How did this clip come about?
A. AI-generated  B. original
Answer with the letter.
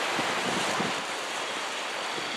B